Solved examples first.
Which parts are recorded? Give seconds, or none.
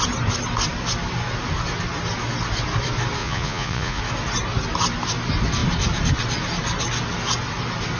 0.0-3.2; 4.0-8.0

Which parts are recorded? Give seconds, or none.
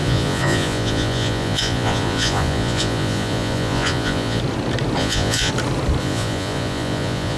4.4-5.0; 5.5-6.0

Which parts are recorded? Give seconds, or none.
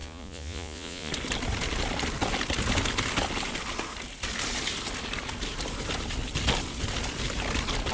1.1-7.9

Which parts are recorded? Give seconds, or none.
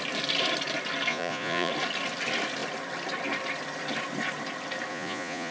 0.0-1.1; 1.7-4.9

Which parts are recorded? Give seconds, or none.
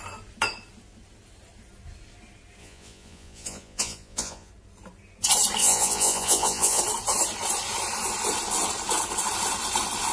0.0-2.6; 4.5-5.6; 6.8-10.1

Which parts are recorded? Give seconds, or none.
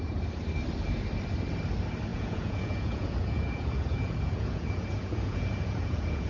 0.0-2.1